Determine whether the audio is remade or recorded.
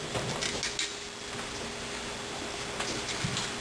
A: recorded